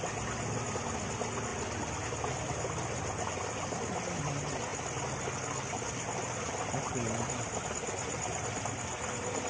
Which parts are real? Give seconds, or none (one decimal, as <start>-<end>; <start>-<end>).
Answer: 0.0-9.5